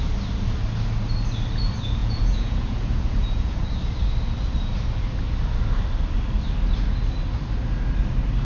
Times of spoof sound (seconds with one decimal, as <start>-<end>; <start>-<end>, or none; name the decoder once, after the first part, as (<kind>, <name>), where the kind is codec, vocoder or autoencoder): 2.0-3.6 (vocoder, Vocos)